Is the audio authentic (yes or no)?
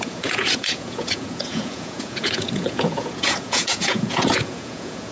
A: no